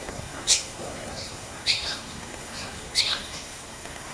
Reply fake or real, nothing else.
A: fake